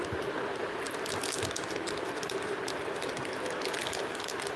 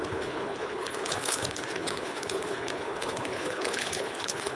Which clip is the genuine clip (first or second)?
first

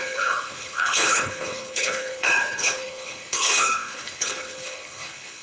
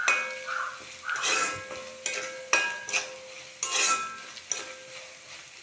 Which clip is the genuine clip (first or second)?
second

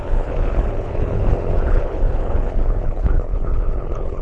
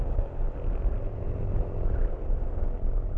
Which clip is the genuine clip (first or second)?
second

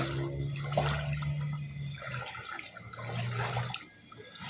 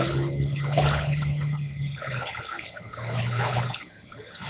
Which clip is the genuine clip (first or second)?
first